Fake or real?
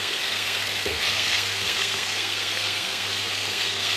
fake